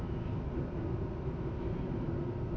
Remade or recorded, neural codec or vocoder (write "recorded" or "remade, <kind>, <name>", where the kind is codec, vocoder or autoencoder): recorded